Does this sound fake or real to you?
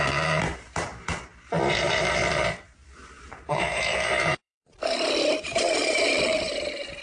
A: fake